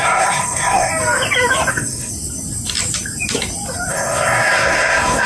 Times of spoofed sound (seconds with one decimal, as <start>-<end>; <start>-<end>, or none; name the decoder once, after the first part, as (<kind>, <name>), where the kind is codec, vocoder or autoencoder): 0.0-0.9 (codec, SNAC); 1.7-2.1; 3.9-5.3